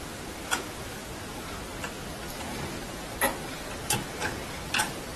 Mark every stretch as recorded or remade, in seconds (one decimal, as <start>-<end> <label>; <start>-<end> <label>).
0.0-0.4 recorded; 0.4-1.0 remade; 1.0-5.2 recorded